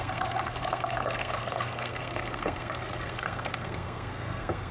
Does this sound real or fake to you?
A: fake